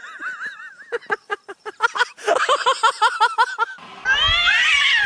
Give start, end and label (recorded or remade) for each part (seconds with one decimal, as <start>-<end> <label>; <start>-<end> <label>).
0.0-5.1 recorded